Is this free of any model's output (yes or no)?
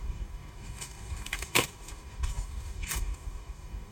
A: no